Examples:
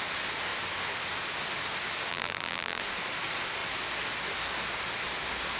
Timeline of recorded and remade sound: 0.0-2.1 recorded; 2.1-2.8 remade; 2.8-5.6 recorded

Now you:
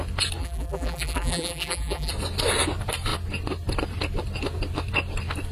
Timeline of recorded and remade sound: 0.0-0.4 recorded; 0.4-2.1 remade; 2.1-5.5 recorded